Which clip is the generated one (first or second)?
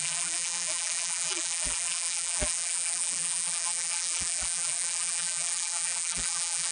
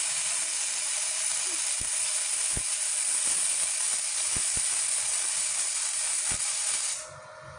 first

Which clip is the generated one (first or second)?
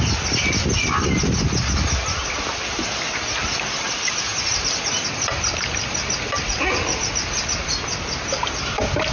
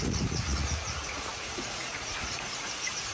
second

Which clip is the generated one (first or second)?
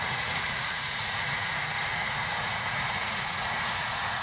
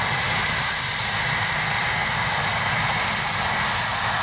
first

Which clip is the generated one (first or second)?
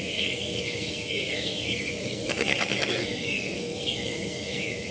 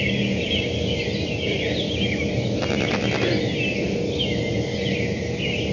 first